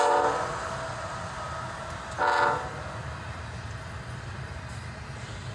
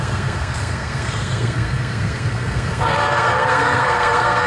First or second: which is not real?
second